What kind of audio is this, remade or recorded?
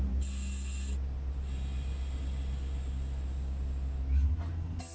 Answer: recorded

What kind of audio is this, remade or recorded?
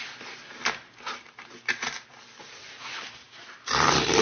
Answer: recorded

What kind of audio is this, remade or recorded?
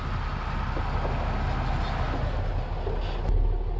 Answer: recorded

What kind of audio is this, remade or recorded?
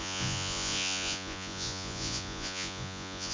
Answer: remade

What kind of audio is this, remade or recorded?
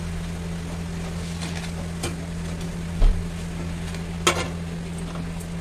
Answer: recorded